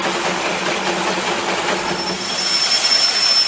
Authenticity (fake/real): real